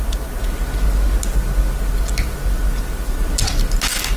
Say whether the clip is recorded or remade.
recorded